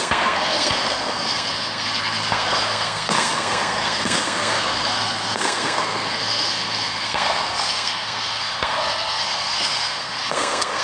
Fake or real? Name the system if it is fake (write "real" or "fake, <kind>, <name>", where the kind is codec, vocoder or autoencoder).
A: fake, codec, SNAC